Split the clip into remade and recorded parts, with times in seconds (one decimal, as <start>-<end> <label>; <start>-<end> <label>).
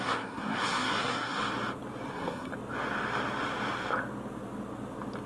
0.0-1.4 remade; 1.4-2.1 recorded; 2.1-2.5 remade; 2.5-5.3 recorded